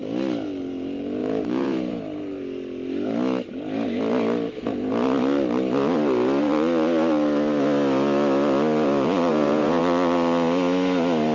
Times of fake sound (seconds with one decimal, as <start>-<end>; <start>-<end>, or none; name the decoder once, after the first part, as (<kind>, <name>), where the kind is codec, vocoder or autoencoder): 1.2-2.0 (vocoder, Vocos); 9.3-9.8